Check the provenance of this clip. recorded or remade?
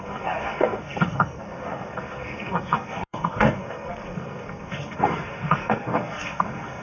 remade